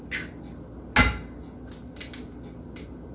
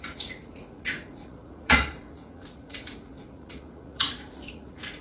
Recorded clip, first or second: first